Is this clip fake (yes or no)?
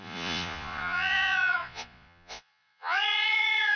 yes